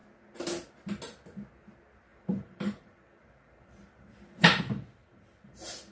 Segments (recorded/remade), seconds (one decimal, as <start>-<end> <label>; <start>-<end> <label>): 0.0-2.1 recorded; 2.1-4.6 remade; 4.6-5.0 recorded; 5.0-5.9 remade